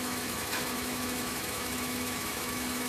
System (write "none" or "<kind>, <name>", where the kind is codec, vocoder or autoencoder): autoencoder, DAC-VAE